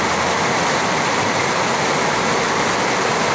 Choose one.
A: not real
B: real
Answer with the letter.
B